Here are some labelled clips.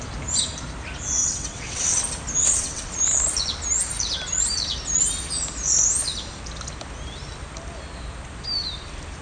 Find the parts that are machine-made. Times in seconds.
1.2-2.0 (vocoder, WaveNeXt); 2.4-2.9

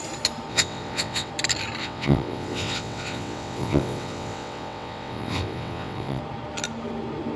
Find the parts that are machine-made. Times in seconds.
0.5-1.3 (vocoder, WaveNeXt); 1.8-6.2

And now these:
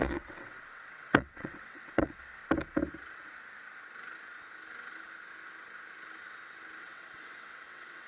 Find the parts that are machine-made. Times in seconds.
0.0-2.4 (vocoder, WaveNeXt); 6.8-8.1

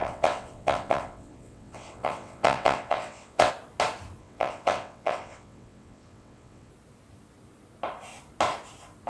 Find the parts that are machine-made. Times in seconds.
0.0-3.5 (vocoder, WaveNeXt); 4.2-6.7

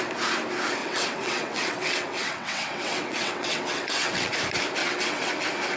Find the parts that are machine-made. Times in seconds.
0.8-4.3 (vocoder, WaveNeXt); 4.8-5.3

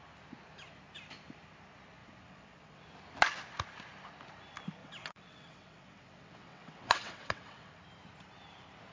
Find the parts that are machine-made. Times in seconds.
2.0-2.8 (vocoder, WaveNeXt); 4.8-7.8

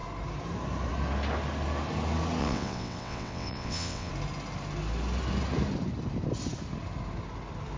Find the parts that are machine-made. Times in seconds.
2.4-4.1 (vocoder, WaveNeXt)